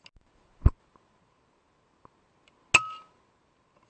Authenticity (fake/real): real